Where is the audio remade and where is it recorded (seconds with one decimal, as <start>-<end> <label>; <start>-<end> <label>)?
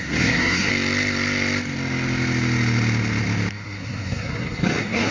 0.0-0.7 remade; 0.7-3.5 recorded; 3.5-5.1 remade